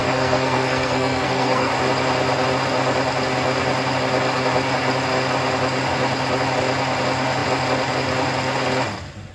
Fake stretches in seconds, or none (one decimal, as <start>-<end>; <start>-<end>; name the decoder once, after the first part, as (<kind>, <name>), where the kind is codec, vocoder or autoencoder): 0.0-1.7 (codec, SNAC)